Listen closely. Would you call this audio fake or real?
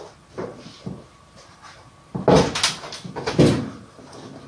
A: real